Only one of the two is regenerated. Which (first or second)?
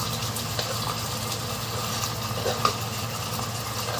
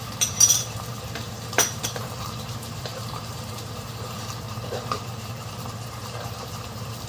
second